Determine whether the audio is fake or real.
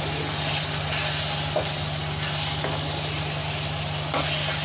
real